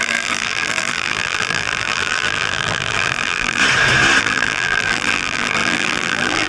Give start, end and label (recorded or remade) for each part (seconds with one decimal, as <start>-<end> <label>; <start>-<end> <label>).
0.0-3.6 remade; 3.6-4.2 recorded; 4.2-6.5 remade